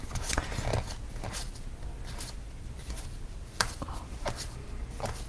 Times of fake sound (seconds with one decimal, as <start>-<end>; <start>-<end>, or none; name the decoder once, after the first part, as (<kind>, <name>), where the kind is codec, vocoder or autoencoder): 1.4-3.2 (vocoder, BigVGAN v2)